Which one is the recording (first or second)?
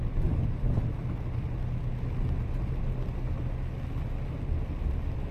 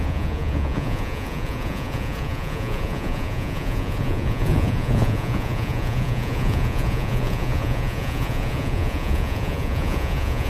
first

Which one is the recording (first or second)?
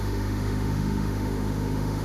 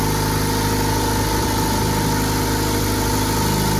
second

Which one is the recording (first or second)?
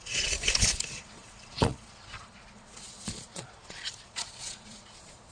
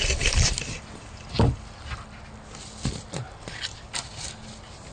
second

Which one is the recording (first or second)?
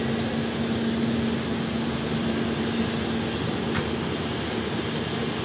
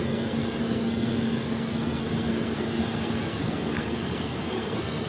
first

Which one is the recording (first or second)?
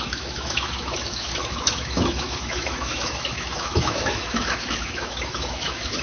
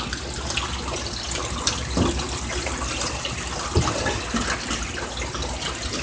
second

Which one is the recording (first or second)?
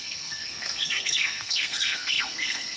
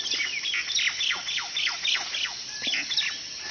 second